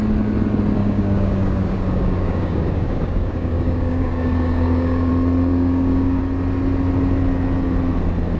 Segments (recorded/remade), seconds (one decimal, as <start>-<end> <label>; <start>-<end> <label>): 0.0-0.8 recorded; 0.8-5.1 remade; 5.1-5.5 recorded; 5.5-6.2 remade; 6.2-8.4 recorded

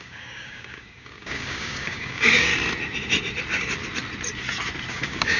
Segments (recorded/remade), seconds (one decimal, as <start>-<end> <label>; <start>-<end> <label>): 0.0-2.5 remade; 2.5-4.9 recorded; 4.9-5.4 remade

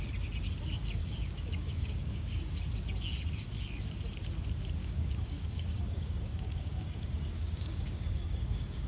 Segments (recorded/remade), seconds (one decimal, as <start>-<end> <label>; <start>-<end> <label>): 0.0-1.0 recorded; 1.0-2.5 remade; 2.5-4.8 recorded; 4.8-8.9 remade